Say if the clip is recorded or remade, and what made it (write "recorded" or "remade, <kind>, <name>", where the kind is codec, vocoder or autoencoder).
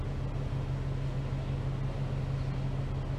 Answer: recorded